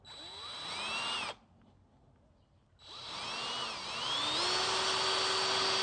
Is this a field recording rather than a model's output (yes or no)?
yes